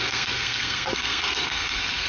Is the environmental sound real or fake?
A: fake